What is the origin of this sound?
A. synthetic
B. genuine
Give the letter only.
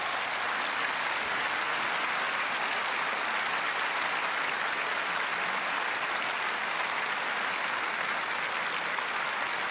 B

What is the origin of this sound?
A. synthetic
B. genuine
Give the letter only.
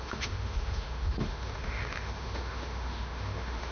A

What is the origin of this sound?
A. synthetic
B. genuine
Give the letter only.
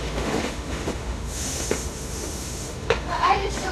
A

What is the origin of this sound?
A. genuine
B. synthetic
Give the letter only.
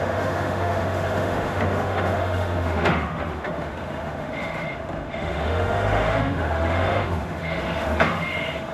B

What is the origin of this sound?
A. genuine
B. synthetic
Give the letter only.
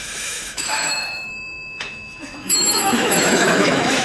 B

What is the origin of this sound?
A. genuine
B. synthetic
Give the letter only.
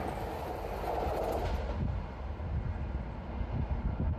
A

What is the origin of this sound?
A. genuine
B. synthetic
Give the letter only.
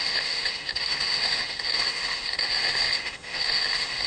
B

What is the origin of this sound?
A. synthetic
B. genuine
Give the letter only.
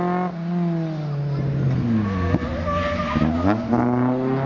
B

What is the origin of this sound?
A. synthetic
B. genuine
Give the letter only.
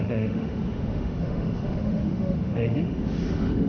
A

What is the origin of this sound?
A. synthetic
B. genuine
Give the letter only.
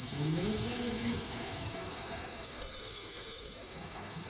A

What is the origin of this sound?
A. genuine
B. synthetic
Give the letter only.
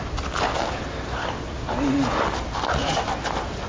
A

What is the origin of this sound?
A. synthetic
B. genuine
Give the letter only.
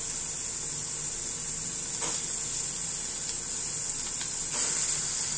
B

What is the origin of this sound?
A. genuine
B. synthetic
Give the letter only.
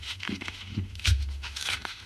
B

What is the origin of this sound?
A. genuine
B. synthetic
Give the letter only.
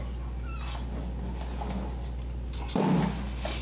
A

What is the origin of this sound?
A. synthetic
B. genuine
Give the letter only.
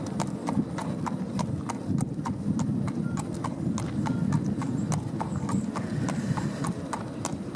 B